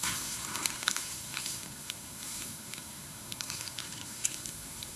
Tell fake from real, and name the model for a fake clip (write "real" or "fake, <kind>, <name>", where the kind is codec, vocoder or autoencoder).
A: fake, codec, SNAC